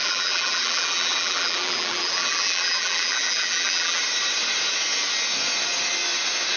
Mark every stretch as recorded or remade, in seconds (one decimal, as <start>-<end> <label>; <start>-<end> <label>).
0.0-4.0 remade; 4.0-6.6 recorded